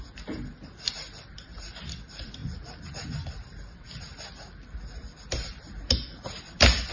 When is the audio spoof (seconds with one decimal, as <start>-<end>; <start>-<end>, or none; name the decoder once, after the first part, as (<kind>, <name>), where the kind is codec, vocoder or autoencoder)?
0.0-2.4 (vocoder, BigVGAN v2); 2.9-4.1; 6.3-6.9